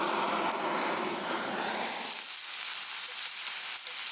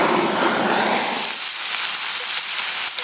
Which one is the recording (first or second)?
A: first